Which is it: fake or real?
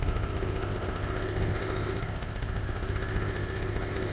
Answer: fake